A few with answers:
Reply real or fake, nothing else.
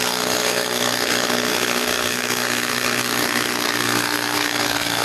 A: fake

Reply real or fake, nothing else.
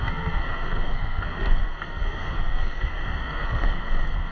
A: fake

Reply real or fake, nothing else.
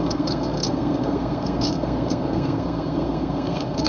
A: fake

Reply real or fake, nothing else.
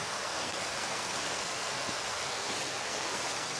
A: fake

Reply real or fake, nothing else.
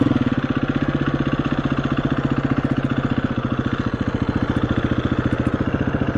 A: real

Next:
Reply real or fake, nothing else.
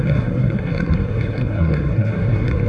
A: fake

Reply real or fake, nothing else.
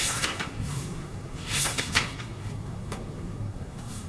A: fake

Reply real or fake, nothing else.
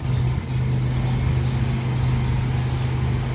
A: real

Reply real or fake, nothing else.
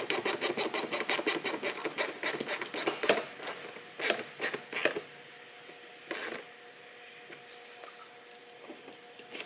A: real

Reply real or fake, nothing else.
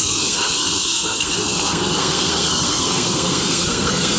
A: fake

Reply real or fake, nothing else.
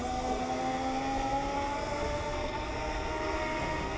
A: fake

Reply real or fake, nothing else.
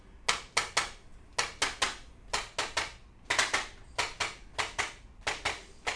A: real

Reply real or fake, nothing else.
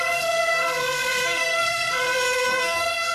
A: fake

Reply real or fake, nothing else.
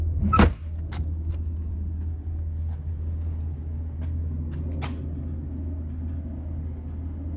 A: real